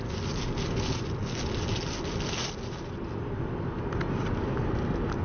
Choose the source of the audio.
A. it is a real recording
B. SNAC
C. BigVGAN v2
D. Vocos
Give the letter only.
A